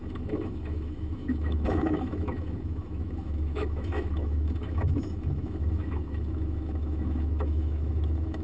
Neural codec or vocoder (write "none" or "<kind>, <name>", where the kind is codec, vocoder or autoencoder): autoencoder, DAC-VAE